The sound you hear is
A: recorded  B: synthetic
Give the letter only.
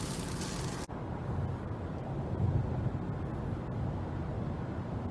A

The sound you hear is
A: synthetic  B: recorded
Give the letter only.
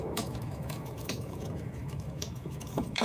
A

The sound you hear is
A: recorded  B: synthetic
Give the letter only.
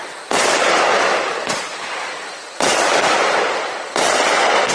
A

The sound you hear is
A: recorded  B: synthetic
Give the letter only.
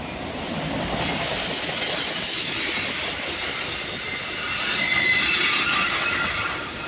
A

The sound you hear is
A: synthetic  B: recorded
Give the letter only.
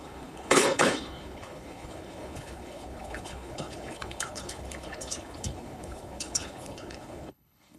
A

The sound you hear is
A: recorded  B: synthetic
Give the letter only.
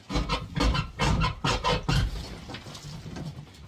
A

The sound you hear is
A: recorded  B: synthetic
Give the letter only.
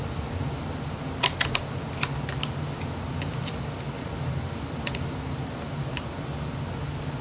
A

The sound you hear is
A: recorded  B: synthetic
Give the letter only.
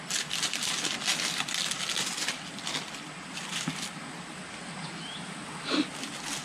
A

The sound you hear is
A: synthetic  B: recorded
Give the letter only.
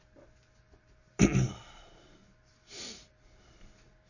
B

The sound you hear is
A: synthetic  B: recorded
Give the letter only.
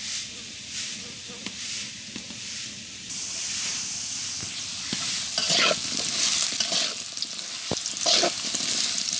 B